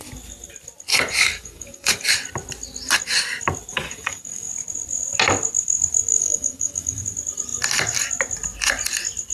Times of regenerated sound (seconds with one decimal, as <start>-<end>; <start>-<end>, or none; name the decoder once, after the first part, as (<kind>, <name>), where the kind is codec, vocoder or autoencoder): 0.9-2.1 (codec, DAC); 3.7-4.5; 6.1-7.0